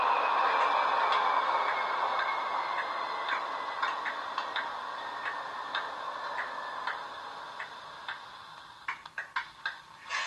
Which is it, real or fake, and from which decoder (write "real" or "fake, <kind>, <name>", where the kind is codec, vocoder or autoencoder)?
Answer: real